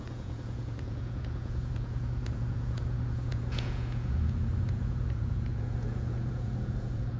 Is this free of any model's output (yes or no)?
no